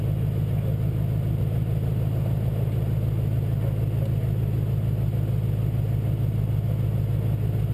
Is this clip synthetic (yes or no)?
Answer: no